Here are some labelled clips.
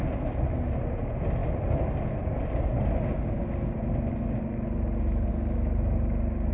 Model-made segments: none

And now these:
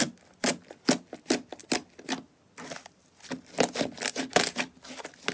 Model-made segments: none

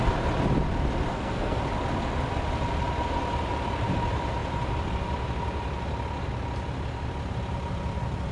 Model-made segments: 1.1-1.6 (codec, SNAC)

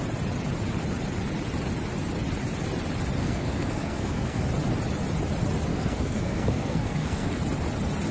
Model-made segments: 3.2-4.4 (codec, SNAC); 5.7-7.4

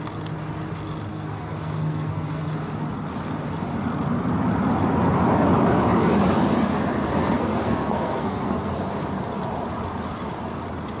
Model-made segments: 1.1-2.5 (codec, SNAC); 7.2-8.7